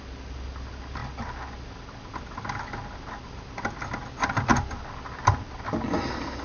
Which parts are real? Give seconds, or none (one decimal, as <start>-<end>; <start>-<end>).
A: 0.0-6.4